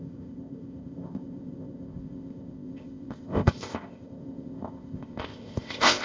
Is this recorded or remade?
remade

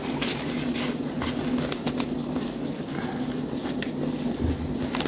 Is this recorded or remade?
recorded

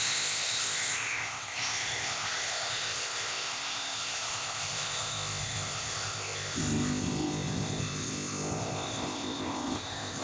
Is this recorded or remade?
remade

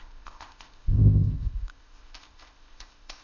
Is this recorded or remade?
remade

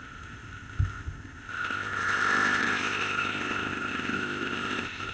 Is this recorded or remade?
remade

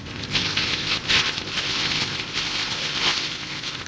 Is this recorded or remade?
remade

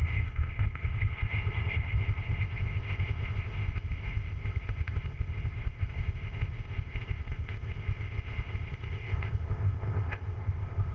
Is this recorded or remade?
remade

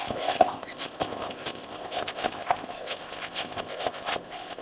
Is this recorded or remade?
remade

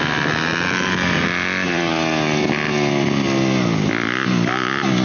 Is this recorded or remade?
recorded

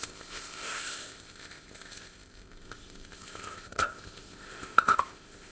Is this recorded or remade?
remade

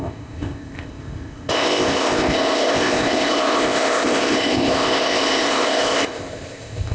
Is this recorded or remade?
remade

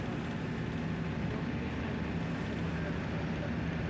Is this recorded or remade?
recorded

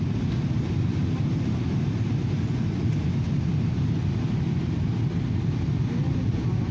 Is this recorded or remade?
recorded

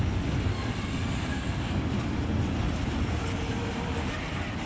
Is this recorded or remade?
recorded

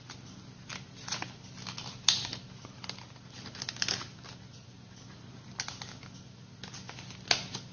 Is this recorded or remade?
recorded